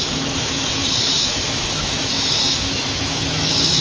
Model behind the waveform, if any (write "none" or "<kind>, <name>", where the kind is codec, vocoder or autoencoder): autoencoder, DAC-VAE